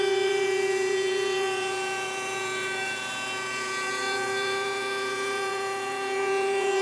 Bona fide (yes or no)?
no